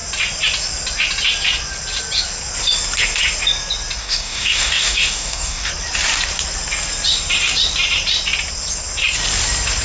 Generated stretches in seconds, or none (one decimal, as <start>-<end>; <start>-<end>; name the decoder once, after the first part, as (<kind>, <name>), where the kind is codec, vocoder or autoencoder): 4.0-5.7 (codec, DAC)